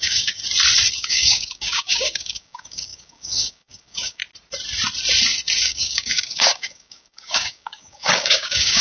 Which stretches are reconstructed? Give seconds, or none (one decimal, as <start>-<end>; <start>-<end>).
0.0-0.4; 0.9-4.2; 5.6-8.8